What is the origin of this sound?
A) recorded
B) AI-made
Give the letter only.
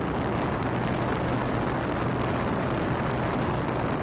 A